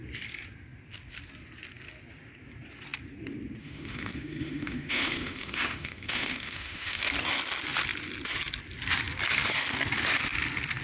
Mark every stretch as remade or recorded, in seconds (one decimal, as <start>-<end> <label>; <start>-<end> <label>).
0.0-3.6 recorded; 3.6-7.1 remade; 7.1-10.8 recorded